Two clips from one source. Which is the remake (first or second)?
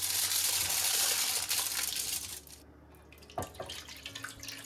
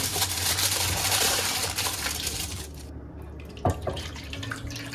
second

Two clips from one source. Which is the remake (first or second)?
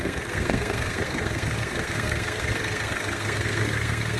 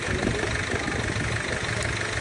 first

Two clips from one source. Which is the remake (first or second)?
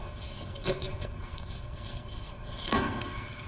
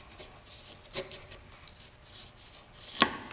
first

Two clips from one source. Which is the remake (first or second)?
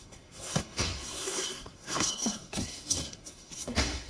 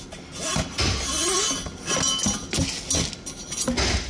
first